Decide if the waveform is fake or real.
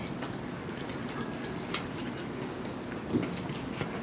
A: real